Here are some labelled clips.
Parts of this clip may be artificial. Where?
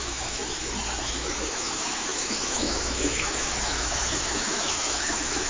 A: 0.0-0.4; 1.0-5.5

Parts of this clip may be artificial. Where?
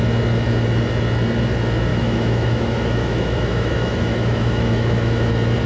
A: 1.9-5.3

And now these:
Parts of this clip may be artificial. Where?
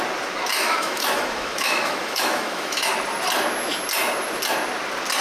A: 0.5-2.9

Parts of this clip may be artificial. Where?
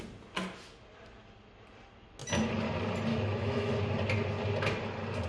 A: 3.1-3.7